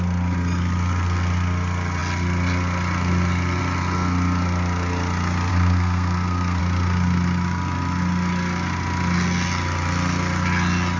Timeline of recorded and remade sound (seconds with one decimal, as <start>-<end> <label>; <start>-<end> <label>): 0.0-5.5 recorded; 5.5-6.6 remade; 6.6-11.0 recorded